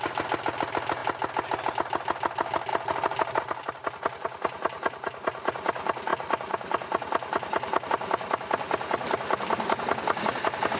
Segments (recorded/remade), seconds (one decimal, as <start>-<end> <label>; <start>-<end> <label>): 0.0-10.8 recorded